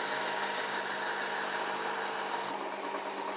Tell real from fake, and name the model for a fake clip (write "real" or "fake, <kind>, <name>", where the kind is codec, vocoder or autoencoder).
real